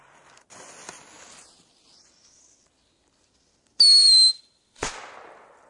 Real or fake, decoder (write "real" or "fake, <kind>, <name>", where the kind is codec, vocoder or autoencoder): real